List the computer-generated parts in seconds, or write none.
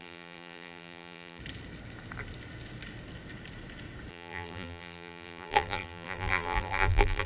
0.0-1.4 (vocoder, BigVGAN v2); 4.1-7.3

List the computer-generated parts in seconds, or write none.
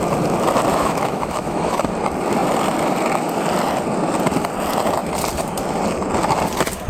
0.7-1.9 (autoencoder, DAC-VAE)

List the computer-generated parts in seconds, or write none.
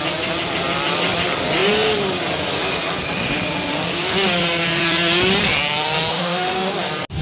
6.1-6.7 (autoencoder, DAC-VAE)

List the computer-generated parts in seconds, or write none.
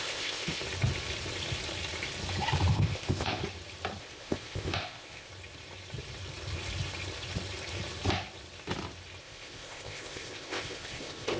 0.0-0.6 (codec, ZipCodec); 2.7-3.4; 4.0-5.3; 9.2-11.4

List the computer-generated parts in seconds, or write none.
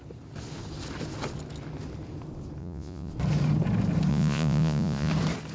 2.6-3.1 (vocoder, Vocos); 4.1-5.1